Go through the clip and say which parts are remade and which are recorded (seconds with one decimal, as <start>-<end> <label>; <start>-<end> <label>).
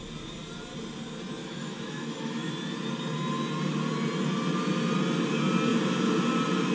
0.0-1.4 recorded; 1.4-2.5 remade; 2.5-6.7 recorded